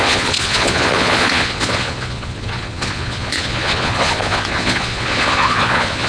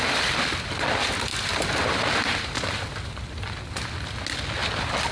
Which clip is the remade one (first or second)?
first